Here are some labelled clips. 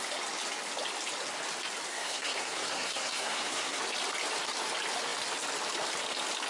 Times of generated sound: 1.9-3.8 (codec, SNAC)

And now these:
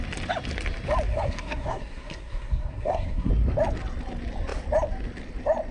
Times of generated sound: 1.1-3.3 (codec, SNAC)

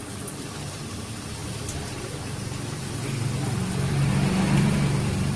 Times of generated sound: none

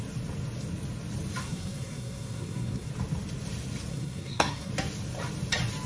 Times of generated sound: 1.4-2.9 (codec, SNAC); 3.9-4.7

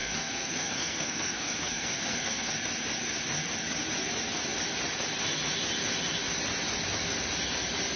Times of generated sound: 0.0-2.5 (codec, SNAC)

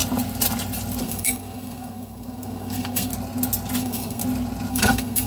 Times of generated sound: 1.0-3.1 (codec, SNAC); 3.8-4.2; 4.7-5.3

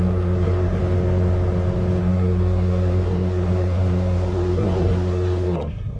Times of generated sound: 0.0-0.8 (codec, SNAC); 2.0-6.0

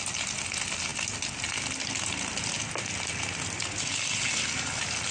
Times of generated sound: none